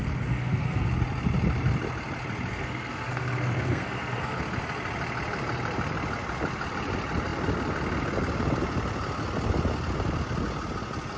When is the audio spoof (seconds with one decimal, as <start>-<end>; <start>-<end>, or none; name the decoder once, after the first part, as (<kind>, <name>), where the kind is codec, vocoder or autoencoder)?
0.0-0.9 (codec, SNAC); 2.5-4.4